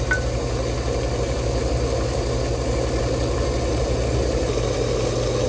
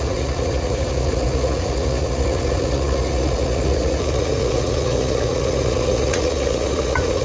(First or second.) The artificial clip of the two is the second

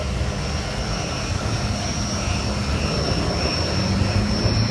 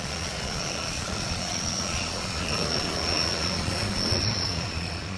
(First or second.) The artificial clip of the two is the second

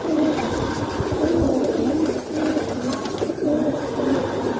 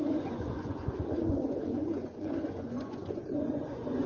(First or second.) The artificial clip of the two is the second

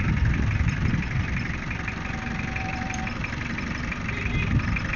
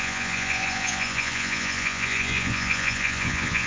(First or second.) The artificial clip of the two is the second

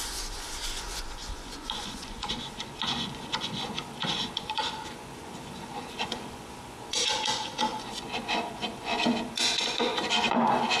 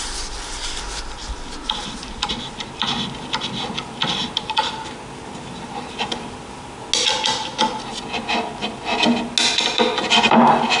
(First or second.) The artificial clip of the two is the first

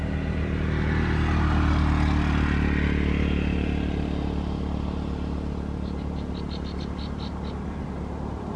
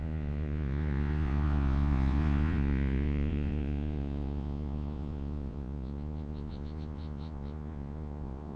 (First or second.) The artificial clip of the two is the second